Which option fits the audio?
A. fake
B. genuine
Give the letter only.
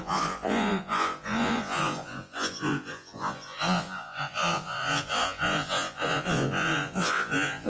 A